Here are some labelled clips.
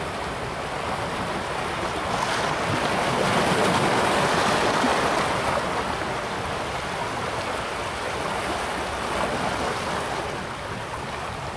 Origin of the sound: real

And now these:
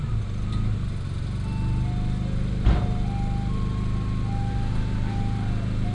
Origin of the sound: real